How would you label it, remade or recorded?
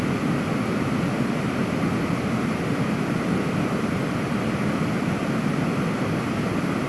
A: recorded